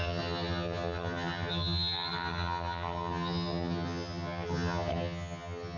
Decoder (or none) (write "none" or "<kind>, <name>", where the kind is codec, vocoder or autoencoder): vocoder, HiFi-GAN